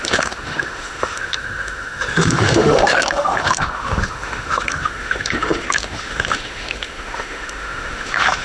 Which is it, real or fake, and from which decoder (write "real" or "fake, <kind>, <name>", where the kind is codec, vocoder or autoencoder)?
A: fake, autoencoder, DAC-VAE